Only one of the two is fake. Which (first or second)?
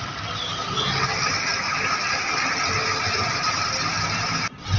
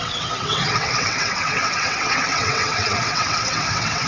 second